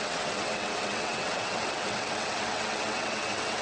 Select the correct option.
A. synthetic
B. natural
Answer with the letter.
A